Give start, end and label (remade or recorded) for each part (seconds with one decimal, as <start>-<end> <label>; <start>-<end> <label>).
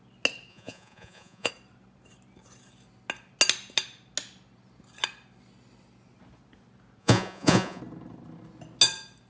0.0-0.5 recorded; 0.5-1.5 remade; 1.5-7.0 recorded; 7.0-7.8 remade; 7.8-9.3 recorded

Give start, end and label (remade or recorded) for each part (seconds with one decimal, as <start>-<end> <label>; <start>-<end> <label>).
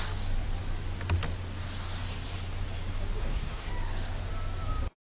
0.0-3.2 recorded; 3.2-3.7 remade; 3.7-5.1 recorded